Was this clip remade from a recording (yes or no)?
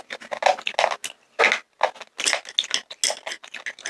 no